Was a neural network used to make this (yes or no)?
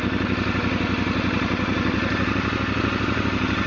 no